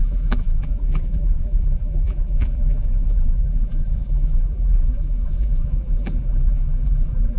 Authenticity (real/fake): fake